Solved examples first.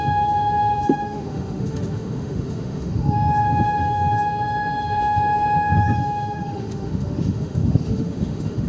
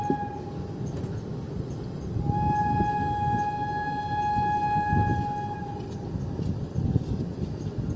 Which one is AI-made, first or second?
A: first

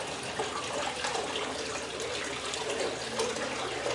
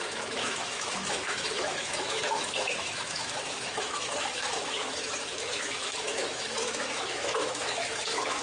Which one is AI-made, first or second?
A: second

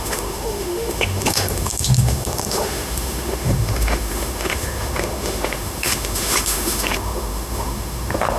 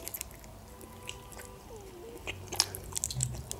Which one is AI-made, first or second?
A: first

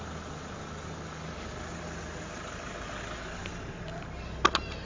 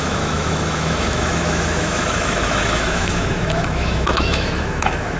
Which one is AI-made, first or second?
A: second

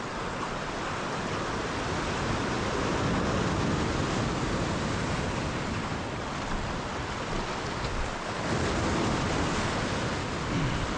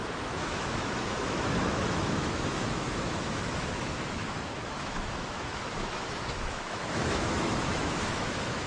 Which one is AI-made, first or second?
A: second